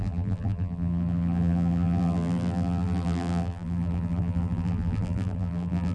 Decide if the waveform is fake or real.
fake